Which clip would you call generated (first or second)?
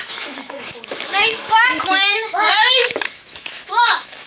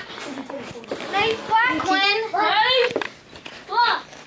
first